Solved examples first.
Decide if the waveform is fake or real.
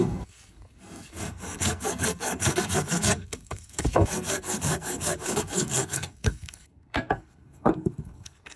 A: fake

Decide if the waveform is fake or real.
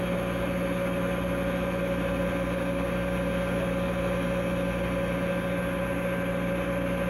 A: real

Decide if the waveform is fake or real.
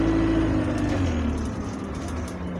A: real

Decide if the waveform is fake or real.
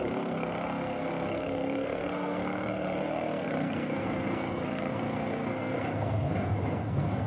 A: fake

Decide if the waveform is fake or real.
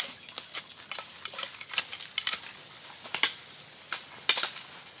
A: real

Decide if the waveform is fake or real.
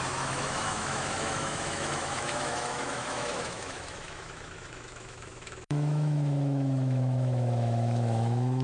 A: fake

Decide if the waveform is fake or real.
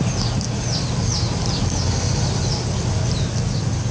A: real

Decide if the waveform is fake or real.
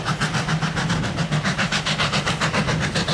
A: real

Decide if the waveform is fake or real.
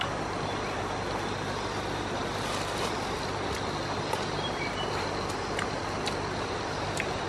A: real